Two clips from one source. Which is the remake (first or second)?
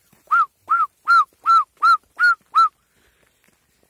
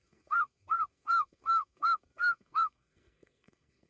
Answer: second